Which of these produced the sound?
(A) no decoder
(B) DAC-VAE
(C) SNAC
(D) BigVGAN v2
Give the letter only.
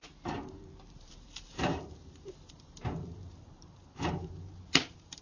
D